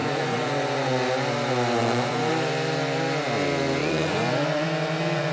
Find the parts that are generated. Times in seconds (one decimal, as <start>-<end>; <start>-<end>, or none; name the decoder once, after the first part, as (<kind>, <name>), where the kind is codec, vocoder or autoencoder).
0.0-0.9 (vocoder, Vocos); 1.8-2.3; 3.8-5.3